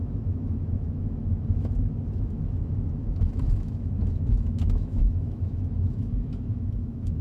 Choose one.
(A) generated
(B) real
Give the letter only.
A